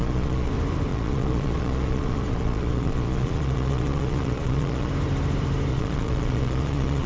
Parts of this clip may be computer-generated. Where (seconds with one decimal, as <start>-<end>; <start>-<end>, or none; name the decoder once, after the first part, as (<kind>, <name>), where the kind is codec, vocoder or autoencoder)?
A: 0.0-0.5 (vocoder, Vocos); 0.9-4.9; 5.7-7.1